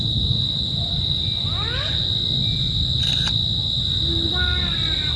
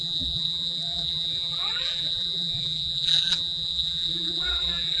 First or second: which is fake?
second